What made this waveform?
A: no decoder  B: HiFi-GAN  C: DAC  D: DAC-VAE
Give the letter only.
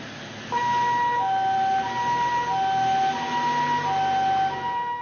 A